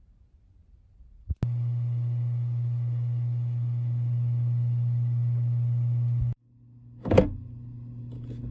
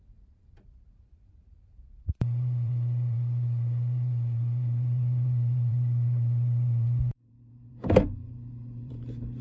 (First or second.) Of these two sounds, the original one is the first